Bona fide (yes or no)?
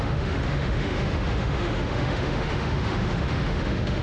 no